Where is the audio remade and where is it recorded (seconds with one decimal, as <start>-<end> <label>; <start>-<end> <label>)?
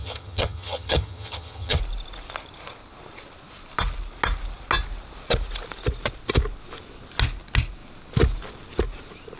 0.0-1.8 remade; 1.8-9.4 recorded